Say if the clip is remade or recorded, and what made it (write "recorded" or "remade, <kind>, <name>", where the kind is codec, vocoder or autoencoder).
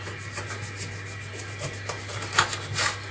recorded